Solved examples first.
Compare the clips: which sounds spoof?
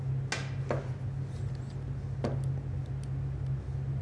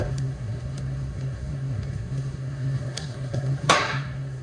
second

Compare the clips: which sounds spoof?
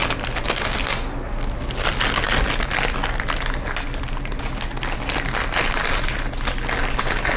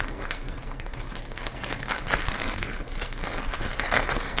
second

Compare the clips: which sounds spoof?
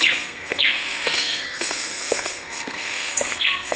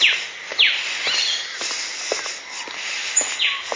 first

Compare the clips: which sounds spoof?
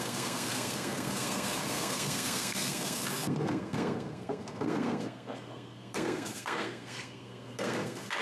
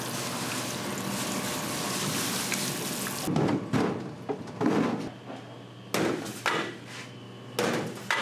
first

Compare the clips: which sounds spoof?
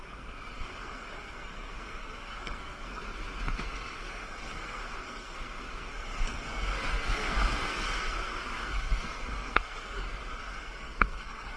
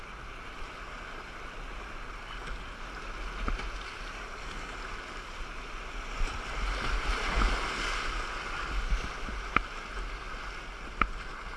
first